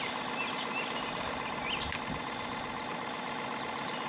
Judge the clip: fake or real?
real